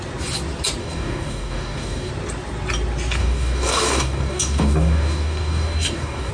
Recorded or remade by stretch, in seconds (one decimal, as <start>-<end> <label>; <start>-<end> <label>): 0.0-0.8 recorded; 0.8-2.1 remade; 2.1-3.2 recorded; 3.2-6.3 remade